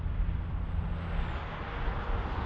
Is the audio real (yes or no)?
yes